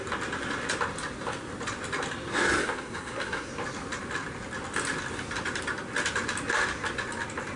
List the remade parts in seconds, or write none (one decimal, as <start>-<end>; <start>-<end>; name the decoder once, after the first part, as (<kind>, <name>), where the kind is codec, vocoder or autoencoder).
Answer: 2.6-3.5 (codec, SNAC)